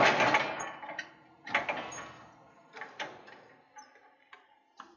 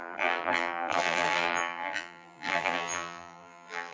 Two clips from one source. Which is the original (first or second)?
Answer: first